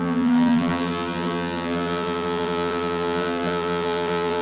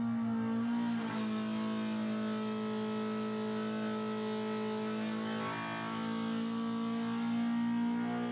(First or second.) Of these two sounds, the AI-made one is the first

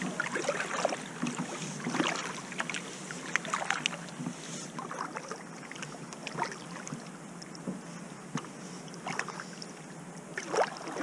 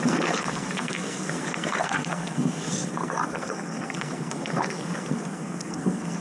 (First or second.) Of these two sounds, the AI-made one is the second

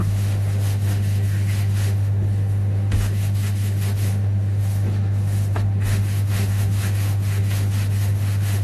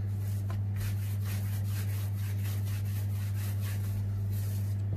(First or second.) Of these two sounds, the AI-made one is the first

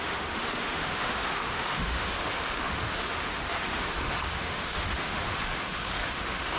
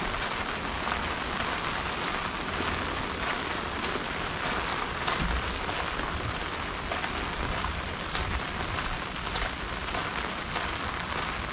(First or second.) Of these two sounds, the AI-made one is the first